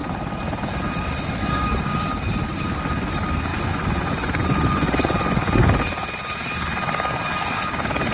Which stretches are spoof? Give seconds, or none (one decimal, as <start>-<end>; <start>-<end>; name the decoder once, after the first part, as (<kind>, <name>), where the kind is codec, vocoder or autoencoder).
3.5-5.8 (vocoder, Vocos)